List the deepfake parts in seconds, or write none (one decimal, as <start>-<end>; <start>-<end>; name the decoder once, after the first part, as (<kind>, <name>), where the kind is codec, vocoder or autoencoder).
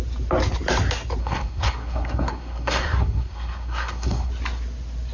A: 1.2-4.3 (codec, SNAC)